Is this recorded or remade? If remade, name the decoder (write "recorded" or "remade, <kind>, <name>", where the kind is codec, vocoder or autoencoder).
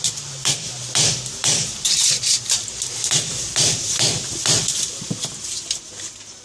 remade, vocoder, BigVGAN v2